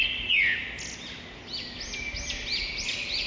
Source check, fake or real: real